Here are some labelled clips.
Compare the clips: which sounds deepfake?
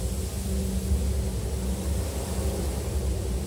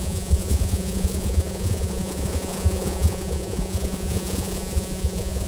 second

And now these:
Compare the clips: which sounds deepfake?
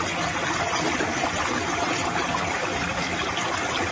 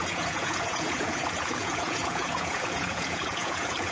second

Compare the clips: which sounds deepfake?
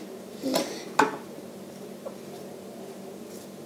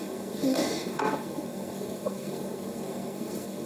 second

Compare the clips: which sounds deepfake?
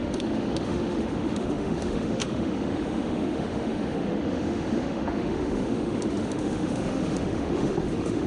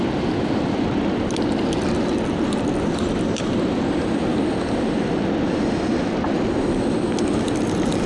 first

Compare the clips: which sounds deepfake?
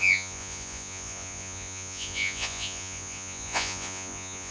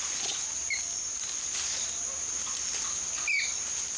first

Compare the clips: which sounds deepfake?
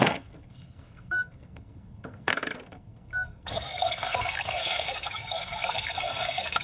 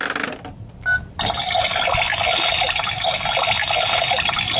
first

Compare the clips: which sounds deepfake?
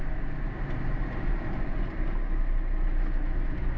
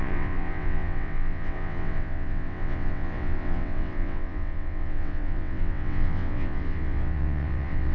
second